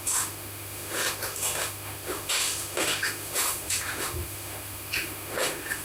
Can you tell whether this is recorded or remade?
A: remade